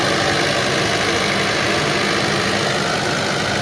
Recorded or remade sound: recorded